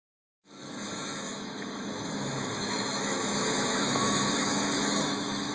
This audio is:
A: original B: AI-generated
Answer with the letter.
B